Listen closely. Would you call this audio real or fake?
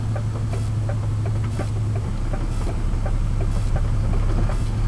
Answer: real